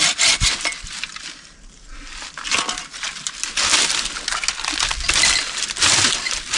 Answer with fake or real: real